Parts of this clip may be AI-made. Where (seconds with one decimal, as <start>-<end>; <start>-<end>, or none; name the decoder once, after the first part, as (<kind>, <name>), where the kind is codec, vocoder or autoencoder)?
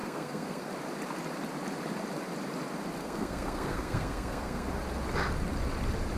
0.0-0.7 (codec, SNAC); 3.0-4.7